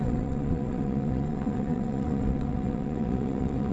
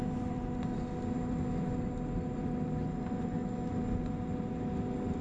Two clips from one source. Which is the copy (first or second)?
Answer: first